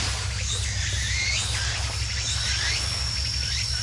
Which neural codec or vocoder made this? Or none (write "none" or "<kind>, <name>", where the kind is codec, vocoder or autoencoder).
none